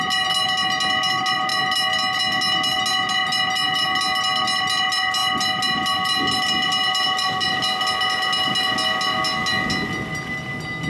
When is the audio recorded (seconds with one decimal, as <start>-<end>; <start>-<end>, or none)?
0.0-10.9

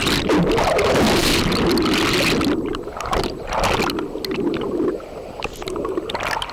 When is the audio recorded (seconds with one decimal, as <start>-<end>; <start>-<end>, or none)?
0.0-6.5

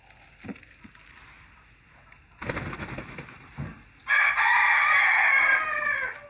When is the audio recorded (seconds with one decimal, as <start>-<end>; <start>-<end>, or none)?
0.0-6.3

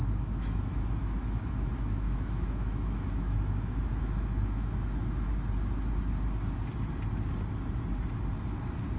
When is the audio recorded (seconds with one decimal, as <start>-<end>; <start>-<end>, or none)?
5.3-9.0

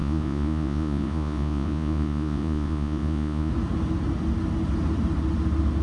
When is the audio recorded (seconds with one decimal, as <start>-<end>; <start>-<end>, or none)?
3.5-5.8

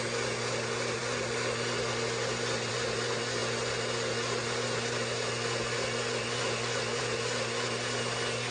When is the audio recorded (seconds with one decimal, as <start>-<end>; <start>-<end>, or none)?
0.0-8.5